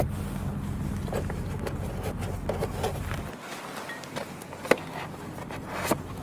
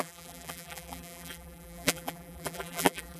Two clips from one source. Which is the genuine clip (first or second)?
first